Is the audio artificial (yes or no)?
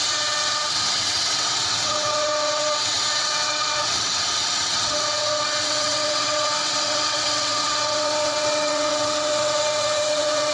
yes